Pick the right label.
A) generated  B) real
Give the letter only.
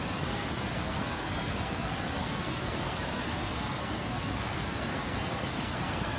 A